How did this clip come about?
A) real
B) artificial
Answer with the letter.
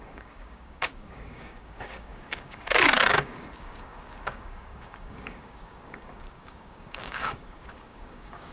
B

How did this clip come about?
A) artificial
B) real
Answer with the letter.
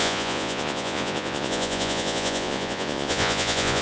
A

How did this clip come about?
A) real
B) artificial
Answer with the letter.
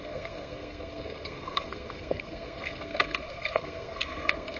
B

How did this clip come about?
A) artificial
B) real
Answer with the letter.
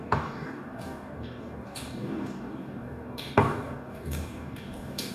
A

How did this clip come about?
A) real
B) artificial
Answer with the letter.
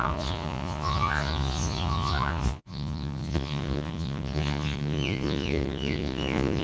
B